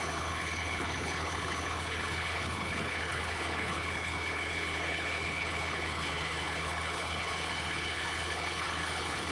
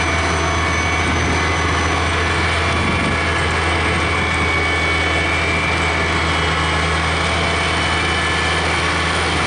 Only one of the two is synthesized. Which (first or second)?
first